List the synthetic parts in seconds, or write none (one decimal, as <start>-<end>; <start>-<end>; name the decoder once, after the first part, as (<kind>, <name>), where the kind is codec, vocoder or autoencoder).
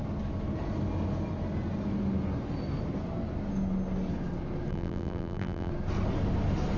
4.7-5.7 (vocoder, BigVGAN v2)